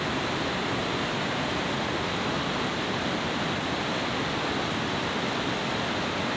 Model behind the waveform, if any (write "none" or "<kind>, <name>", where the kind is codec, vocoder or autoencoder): none